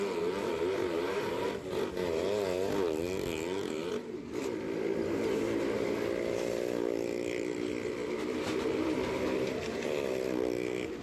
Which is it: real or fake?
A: real